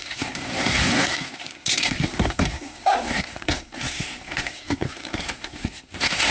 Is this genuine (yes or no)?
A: no